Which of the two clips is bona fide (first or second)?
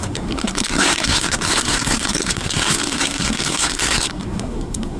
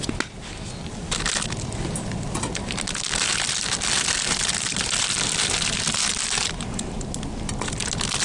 second